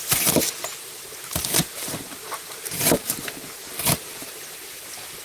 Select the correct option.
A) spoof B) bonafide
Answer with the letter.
A